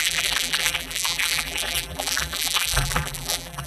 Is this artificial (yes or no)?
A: yes